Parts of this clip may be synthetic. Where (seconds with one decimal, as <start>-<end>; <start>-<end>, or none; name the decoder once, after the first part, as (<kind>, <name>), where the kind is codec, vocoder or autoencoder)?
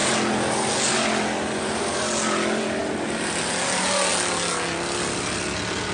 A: none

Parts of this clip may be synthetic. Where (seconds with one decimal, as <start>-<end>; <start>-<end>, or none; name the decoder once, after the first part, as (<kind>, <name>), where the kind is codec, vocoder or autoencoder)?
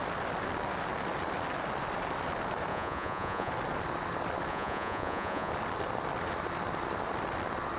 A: 2.7-3.5 (vocoder, Vocos); 4.5-5.5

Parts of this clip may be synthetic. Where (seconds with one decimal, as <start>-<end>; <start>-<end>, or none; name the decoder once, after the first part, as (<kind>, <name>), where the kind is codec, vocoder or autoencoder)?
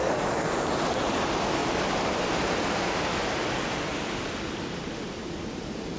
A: 1.6-2.5 (vocoder, BigVGAN v2)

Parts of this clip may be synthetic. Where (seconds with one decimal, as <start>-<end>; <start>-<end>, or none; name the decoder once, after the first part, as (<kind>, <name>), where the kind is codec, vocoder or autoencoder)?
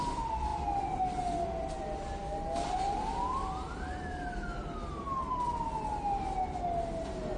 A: none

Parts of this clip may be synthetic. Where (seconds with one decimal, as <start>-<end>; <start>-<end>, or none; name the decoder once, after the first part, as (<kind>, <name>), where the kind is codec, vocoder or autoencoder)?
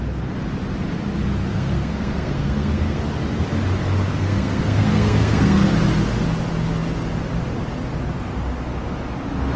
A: 1.5-3.0 (codec, SNAC); 4.1-5.7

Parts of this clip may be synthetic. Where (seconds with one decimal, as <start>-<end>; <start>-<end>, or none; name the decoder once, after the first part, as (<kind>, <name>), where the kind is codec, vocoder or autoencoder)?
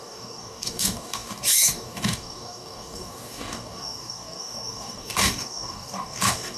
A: 0.0-6.6 (codec, DAC)